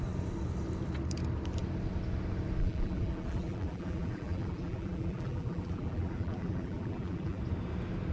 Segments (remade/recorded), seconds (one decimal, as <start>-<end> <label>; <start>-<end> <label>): 0.0-2.6 recorded; 2.6-7.4 remade; 7.4-8.1 recorded